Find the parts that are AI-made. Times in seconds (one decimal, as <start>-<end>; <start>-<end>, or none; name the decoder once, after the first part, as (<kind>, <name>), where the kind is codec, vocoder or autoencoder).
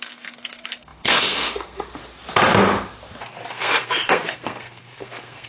0.0-2.0 (codec, SNAC); 3.5-5.5